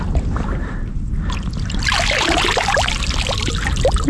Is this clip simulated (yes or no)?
no